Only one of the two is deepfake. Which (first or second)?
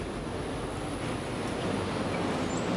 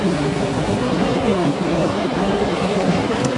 second